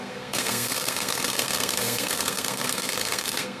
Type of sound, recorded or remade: remade